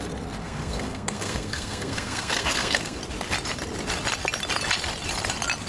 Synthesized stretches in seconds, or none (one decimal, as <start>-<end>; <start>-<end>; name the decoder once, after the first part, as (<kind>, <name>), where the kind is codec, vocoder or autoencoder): 0.4-3.0 (codec, SNAC)